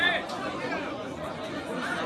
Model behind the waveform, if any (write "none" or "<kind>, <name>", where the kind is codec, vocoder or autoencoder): vocoder, Vocos